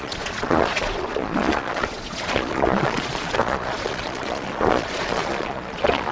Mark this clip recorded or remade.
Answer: remade